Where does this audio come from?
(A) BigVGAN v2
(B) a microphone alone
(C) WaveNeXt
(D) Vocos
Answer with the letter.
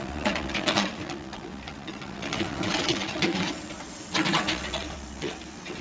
C